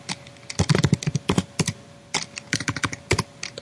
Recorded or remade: recorded